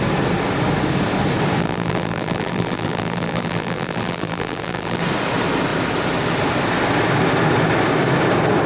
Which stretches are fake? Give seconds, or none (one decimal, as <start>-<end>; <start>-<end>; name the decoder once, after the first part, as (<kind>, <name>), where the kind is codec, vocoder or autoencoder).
1.6-5.0 (vocoder, BigVGAN v2)